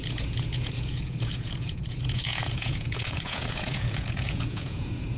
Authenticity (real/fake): fake